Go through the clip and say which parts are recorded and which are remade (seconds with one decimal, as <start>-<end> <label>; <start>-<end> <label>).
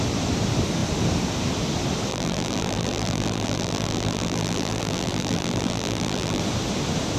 0.0-2.1 recorded; 2.1-6.4 remade; 6.4-7.2 recorded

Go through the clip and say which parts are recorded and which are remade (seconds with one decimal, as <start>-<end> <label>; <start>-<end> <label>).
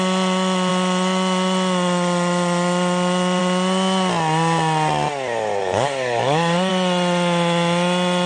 0.0-5.6 recorded; 5.6-6.7 remade; 6.7-8.3 recorded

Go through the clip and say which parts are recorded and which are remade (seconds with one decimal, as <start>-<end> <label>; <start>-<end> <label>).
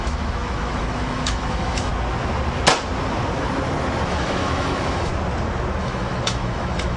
0.0-1.9 remade; 1.9-4.1 recorded; 4.1-5.1 remade; 5.1-5.8 recorded; 5.8-7.0 remade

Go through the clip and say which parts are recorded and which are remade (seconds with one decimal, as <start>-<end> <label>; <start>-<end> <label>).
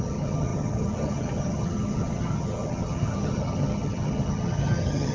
0.0-5.1 remade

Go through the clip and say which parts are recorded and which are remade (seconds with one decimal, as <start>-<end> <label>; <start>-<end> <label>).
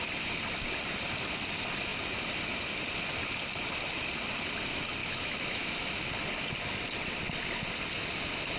0.0-5.0 recorded; 5.0-6.1 remade; 6.1-8.6 recorded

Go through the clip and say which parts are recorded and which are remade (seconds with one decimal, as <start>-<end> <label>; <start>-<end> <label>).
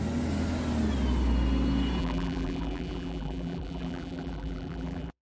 0.0-2.0 recorded; 2.0-5.2 remade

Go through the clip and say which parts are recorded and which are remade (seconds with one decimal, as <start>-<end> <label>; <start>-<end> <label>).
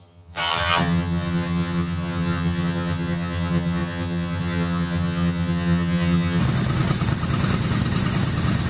0.0-6.4 remade; 6.4-8.7 recorded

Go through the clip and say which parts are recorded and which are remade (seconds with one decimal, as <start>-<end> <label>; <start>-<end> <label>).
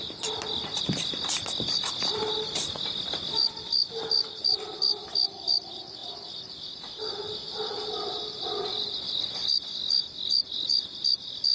0.0-11.5 recorded